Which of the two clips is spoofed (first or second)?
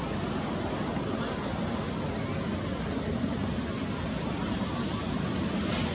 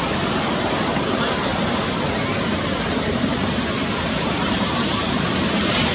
second